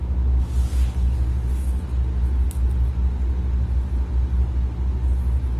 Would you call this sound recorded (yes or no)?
yes